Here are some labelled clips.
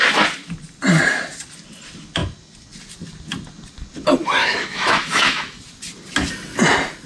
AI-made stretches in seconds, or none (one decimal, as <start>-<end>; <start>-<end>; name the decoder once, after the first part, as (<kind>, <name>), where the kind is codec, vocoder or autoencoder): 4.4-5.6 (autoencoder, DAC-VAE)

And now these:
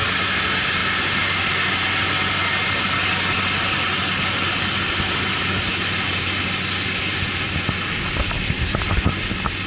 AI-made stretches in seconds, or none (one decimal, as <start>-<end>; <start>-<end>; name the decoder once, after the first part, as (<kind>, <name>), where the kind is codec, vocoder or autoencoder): none

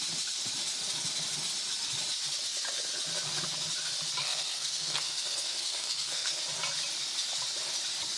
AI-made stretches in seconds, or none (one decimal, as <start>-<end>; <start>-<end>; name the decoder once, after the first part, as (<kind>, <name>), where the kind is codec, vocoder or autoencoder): 4.2-6.4 (codec, SNAC)

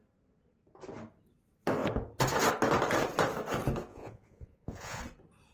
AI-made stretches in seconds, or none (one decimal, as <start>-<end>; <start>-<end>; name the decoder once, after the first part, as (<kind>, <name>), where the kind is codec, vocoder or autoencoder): 3.9-5.0 (vocoder, Vocos)

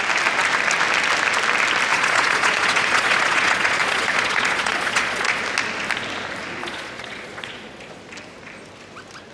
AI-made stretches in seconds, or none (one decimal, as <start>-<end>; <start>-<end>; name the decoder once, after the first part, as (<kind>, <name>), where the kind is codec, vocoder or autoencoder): 1.9-5.4 (vocoder, Vocos); 6.6-7.9

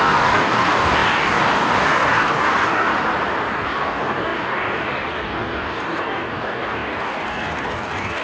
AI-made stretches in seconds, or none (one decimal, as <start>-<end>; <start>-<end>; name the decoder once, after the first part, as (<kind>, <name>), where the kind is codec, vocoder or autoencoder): 0.0-2.9 (codec, DAC); 3.5-8.2